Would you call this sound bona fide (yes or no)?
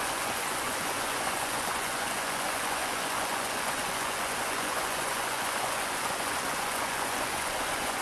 no